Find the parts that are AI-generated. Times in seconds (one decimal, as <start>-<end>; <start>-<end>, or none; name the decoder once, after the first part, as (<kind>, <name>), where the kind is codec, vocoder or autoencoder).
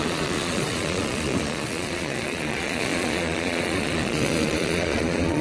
0.0-5.4 (vocoder, Vocos)